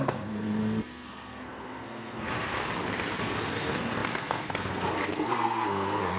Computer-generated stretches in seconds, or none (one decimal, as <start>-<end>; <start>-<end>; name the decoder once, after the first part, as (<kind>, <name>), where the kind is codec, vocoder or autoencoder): 0.0-2.6 (codec, SNAC); 3.2-6.2